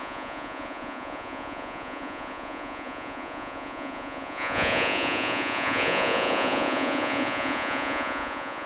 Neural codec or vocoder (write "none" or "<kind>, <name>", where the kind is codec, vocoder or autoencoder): vocoder, Vocos